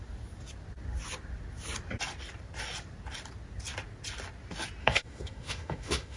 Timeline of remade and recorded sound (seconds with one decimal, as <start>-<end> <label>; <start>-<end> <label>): 0.0-4.8 recorded; 4.8-6.2 remade